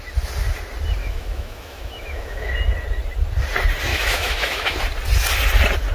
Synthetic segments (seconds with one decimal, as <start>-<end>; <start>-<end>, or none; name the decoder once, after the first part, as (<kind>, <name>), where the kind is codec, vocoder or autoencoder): 1.0-2.5 (autoencoder, DAC-VAE); 3.9-4.8